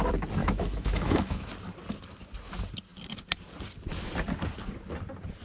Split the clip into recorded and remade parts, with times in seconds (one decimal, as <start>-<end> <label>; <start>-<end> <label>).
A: 0.0-0.4 recorded; 0.4-1.5 remade; 1.5-5.4 recorded